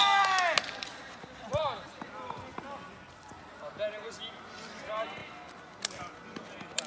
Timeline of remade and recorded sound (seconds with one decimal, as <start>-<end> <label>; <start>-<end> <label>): 0.0-0.8 recorded; 0.8-2.5 remade; 2.5-4.3 recorded; 4.3-6.9 remade